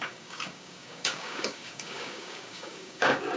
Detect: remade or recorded remade